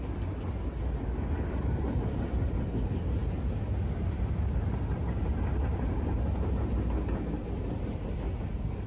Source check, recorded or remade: recorded